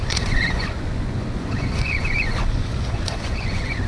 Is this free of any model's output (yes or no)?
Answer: no